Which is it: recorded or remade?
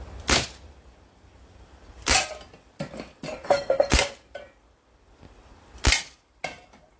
recorded